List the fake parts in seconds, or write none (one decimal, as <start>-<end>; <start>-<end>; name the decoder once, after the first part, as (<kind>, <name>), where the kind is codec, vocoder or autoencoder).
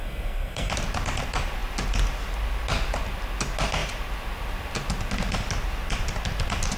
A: 0.0-0.7 (codec, SNAC)